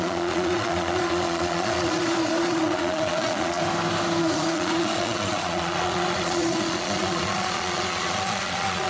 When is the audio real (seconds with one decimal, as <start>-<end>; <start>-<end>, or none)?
3.6-4.2